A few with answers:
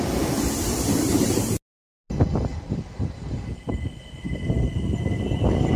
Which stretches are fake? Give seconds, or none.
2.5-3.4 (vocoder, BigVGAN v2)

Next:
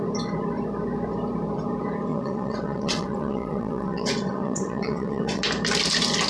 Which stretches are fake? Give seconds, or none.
2.1-5.4 (vocoder, WaveNeXt)